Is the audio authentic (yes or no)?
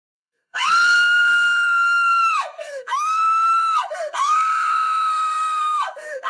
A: no